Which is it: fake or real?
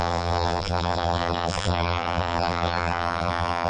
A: fake